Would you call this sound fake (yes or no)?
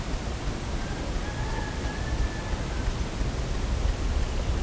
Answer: no